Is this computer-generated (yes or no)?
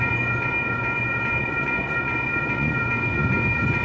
yes